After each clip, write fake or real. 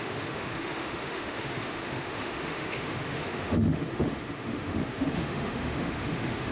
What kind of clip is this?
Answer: fake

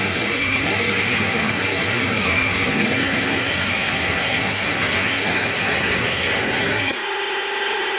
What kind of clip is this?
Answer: fake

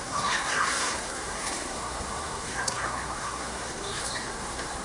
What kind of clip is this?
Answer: fake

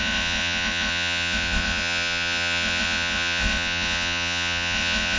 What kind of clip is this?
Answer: fake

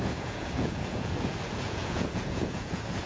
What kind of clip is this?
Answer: fake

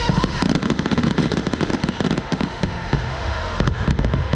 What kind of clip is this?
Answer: fake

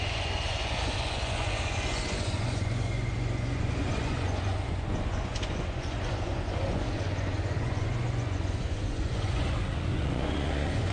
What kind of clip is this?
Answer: fake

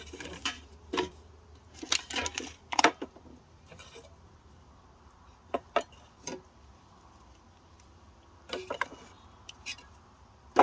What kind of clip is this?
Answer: real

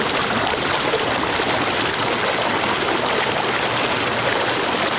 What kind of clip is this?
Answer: real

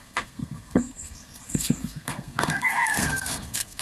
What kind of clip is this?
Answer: fake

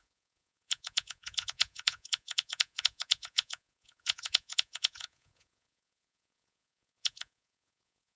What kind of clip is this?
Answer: fake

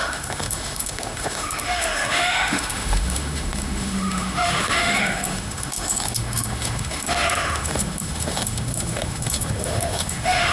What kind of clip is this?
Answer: fake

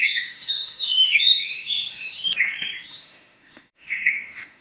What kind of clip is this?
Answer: fake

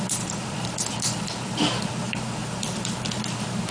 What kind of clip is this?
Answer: fake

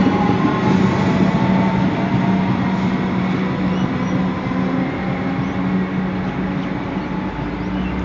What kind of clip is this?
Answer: real